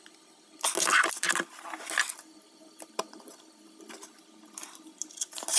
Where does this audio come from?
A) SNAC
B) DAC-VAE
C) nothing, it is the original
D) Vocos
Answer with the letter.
C